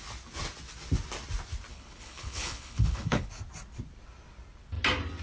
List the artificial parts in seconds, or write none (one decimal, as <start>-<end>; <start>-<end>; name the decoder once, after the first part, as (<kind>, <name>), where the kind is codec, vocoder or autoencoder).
1.7-3.3 (codec, HILCodec)